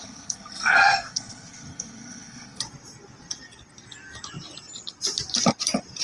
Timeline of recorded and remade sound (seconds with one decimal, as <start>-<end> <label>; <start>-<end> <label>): 0.0-2.6 remade; 2.6-6.0 recorded